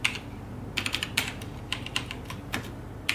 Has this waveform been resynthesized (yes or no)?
no